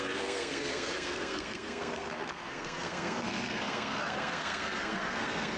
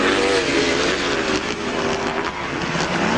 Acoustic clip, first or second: second